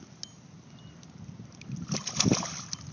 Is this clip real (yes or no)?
yes